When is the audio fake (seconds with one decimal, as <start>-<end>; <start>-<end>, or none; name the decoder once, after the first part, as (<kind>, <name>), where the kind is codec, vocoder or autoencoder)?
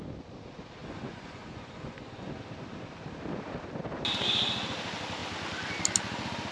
0.8-2.3 (vocoder, Vocos)